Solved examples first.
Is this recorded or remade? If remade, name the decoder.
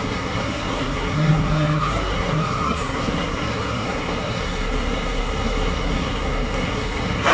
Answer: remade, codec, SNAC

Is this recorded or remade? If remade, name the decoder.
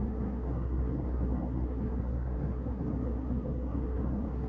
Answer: remade, codec, SNAC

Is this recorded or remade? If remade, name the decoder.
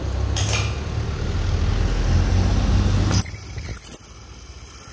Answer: recorded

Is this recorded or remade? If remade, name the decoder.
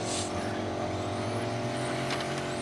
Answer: recorded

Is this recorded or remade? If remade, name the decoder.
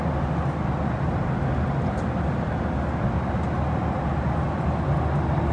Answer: recorded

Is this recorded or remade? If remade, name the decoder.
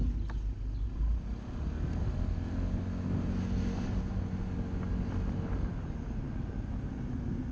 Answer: recorded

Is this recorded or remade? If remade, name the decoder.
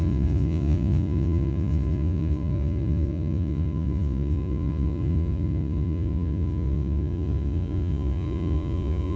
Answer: remade, vocoder, Vocos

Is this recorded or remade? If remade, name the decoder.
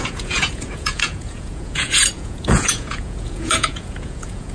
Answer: remade, vocoder, Vocos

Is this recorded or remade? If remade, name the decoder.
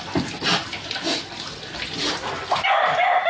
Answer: recorded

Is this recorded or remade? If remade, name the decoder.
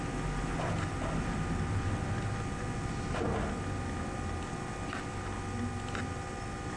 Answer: recorded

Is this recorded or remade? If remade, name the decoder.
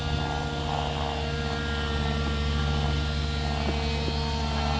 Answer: recorded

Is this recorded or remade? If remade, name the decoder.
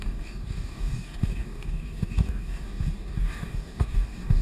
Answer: remade, codec, DAC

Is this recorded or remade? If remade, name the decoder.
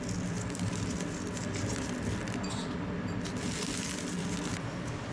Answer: recorded